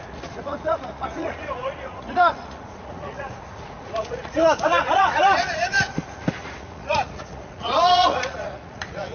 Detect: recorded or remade remade